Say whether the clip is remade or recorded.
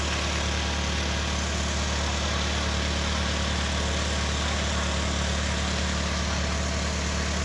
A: recorded